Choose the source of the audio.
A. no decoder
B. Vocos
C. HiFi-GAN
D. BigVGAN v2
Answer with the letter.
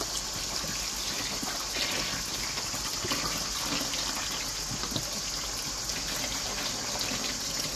A